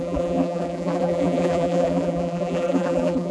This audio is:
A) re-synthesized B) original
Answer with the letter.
A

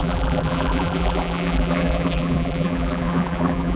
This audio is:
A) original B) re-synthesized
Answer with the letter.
B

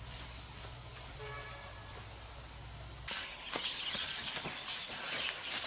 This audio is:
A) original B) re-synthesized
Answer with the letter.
A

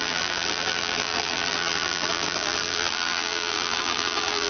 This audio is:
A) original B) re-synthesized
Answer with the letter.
B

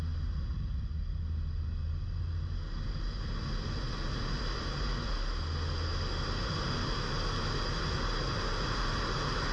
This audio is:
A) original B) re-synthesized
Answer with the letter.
A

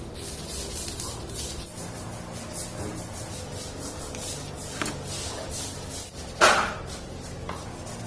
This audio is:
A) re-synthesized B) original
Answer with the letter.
B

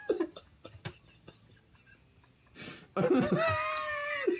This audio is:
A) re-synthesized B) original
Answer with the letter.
B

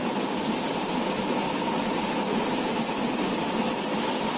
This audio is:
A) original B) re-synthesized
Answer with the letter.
A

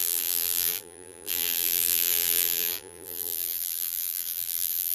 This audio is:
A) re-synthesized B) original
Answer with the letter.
A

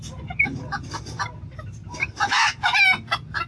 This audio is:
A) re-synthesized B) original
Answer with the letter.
B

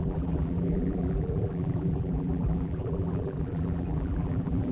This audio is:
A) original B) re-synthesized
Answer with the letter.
B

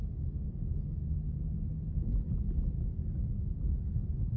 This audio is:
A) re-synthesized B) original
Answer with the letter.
B